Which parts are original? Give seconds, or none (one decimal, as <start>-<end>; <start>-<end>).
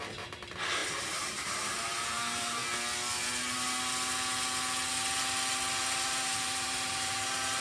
2.6-5.8